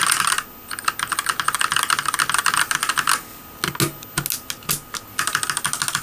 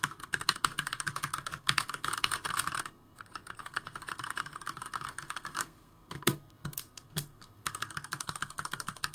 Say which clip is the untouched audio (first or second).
first